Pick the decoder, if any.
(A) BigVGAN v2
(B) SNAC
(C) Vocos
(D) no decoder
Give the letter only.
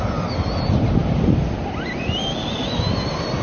D